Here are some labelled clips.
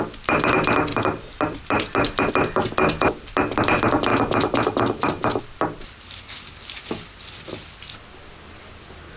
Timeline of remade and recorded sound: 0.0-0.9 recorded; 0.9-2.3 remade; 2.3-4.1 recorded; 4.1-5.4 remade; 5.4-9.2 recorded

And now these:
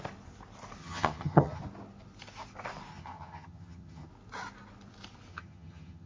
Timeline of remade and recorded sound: 0.0-0.8 recorded; 0.8-1.6 remade; 1.6-2.9 recorded; 2.9-4.1 remade; 4.1-5.3 recorded; 5.3-6.1 remade

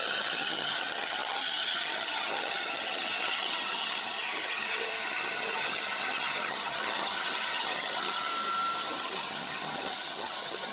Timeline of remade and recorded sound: 0.0-8.3 remade; 8.3-8.8 recorded; 8.8-10.7 remade

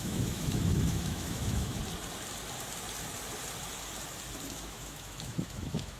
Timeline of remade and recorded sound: 0.0-1.8 remade; 1.8-4.5 recorded; 4.5-6.0 remade

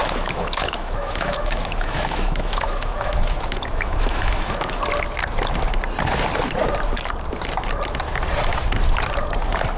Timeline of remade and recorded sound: 0.0-4.8 remade; 4.8-9.8 recorded

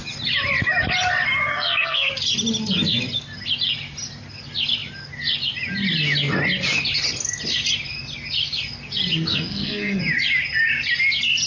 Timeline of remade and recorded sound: 0.0-1.5 recorded; 1.5-2.1 remade; 2.1-9.3 recorded; 9.3-10.0 remade; 10.0-11.5 recorded

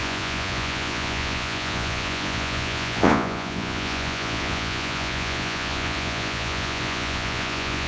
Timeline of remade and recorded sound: 0.0-7.9 remade

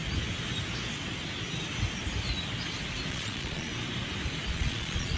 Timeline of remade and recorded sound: 0.0-3.1 recorded; 3.1-3.7 remade; 3.7-4.5 recorded; 4.5-5.2 remade